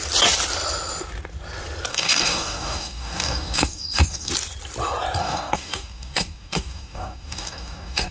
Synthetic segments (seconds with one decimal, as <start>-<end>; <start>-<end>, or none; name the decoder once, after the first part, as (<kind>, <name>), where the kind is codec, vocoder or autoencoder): 1.9-4.3 (codec, DAC); 5.2-8.1